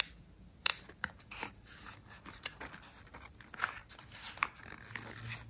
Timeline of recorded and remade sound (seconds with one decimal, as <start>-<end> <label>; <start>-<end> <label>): 0.0-0.6 recorded; 0.6-2.6 remade; 2.6-3.8 recorded; 3.8-4.3 remade; 4.3-5.5 recorded